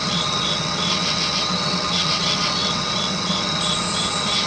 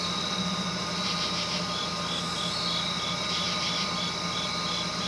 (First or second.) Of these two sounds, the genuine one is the second